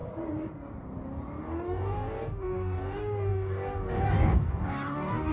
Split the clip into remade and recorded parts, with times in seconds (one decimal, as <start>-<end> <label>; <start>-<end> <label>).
0.0-1.4 recorded; 1.4-5.3 remade